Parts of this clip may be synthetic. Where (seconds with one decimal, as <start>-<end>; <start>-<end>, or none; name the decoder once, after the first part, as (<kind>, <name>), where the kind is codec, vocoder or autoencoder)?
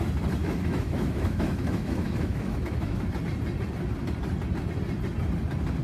0.4-3.1 (autoencoder, DAC-VAE)